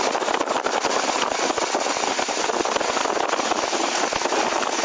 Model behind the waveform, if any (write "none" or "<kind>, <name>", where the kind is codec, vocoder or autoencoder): none